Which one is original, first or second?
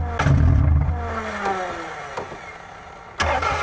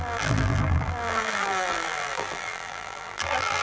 first